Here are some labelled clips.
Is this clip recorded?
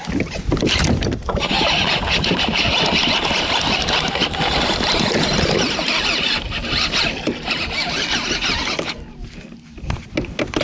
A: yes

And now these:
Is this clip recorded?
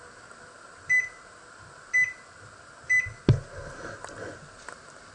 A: yes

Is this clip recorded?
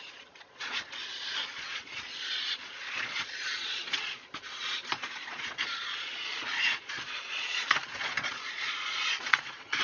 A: no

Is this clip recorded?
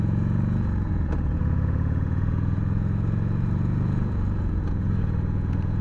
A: no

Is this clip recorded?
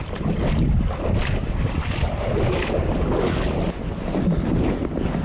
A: yes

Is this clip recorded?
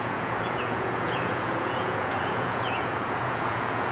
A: no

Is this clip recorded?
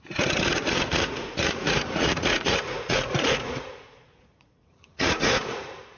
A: no